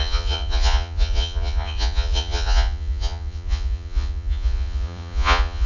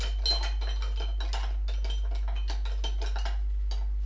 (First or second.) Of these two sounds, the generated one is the first